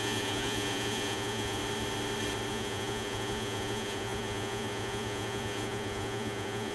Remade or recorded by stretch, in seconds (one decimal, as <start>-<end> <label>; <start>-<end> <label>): 0.0-1.6 remade; 1.6-2.5 recorded; 2.5-6.7 remade